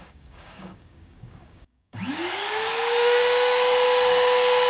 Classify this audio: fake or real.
fake